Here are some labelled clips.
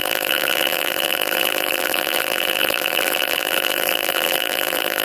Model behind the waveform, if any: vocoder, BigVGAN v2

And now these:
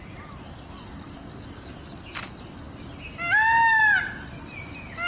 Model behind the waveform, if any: none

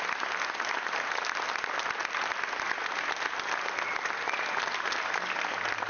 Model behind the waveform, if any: none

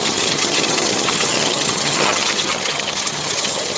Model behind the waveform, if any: vocoder, HiFi-GAN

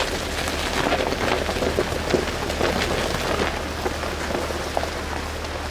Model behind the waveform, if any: none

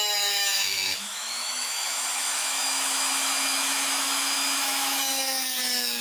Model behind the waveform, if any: autoencoder, DAC-VAE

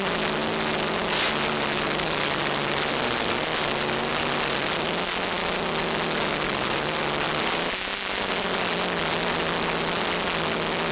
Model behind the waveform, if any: none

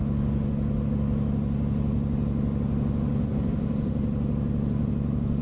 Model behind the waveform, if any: none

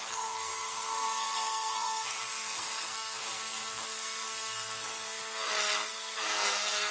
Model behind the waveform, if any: codec, SNAC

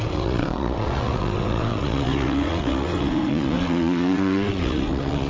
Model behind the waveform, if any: vocoder, WaveNeXt